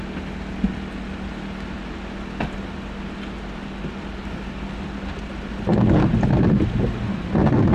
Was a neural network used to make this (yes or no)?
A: no